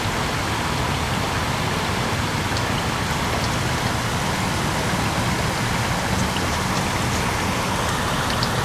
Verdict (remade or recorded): recorded